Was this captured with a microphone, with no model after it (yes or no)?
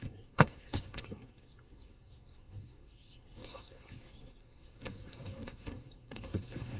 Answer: no